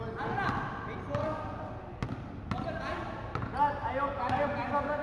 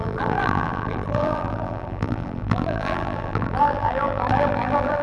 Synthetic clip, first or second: second